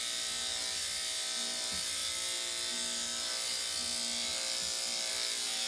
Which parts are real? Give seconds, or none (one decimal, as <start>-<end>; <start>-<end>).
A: 0.0-5.7

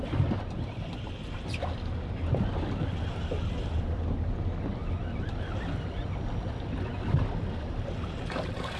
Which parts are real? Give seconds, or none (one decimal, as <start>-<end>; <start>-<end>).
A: 0.0-8.8

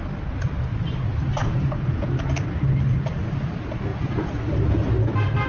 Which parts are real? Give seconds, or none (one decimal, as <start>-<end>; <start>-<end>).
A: 0.0-1.4; 2.1-3.9; 4.4-5.5

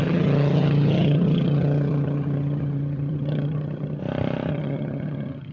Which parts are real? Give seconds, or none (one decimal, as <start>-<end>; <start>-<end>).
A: 4.0-4.5